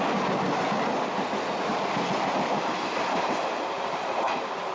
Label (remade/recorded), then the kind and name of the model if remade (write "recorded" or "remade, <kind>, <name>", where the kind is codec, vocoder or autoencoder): recorded